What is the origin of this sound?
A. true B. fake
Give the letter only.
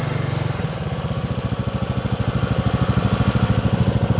A